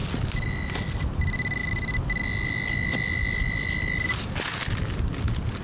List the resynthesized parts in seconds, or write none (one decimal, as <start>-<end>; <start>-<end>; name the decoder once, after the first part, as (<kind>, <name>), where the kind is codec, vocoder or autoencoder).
none